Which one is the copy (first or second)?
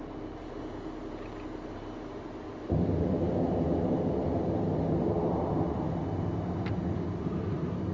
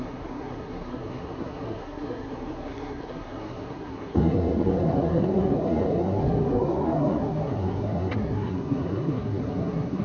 second